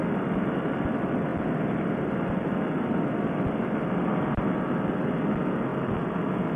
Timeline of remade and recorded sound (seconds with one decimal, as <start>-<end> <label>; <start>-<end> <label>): 0.0-6.6 recorded